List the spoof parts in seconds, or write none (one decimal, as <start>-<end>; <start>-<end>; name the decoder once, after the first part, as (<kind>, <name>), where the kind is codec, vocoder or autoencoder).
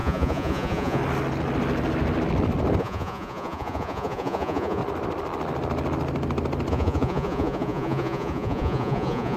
0.0-1.0 (vocoder, Vocos); 2.8-4.8; 6.7-9.4